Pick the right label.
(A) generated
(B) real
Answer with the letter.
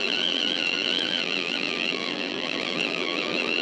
A